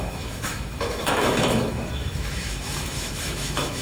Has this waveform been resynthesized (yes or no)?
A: yes